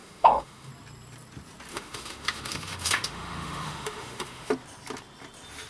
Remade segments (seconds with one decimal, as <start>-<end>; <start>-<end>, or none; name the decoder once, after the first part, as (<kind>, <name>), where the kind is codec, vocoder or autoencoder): 0.0-0.7 (autoencoder, DAC-VAE); 1.7-4.5